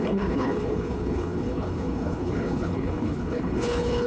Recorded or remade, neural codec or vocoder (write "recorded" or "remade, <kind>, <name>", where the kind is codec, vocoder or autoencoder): remade, codec, HILCodec